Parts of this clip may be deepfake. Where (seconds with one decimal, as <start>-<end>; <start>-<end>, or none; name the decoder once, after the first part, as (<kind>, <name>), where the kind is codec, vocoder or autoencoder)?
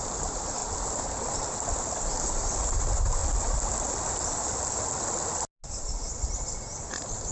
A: 0.0-0.6 (vocoder, BigVGAN v2); 2.0-3.2; 5.7-7.3